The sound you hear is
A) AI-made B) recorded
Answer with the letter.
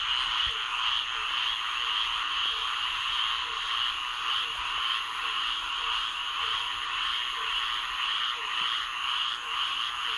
B